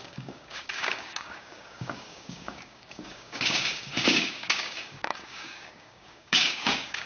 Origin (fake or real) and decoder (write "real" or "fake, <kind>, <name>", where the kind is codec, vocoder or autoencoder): fake, codec, DAC